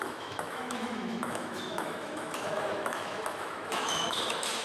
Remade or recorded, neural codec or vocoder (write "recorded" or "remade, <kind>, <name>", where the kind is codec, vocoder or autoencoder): remade, autoencoder, DAC-VAE